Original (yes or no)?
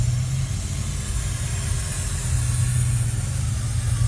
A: yes